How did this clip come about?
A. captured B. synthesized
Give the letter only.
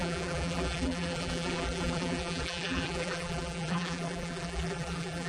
B